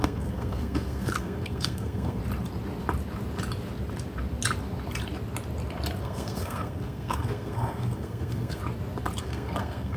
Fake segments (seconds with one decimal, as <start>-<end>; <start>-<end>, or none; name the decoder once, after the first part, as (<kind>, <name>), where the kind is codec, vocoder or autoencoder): 0.0-2.2 (codec, SNAC); 6.0-8.6; 9.2-10.0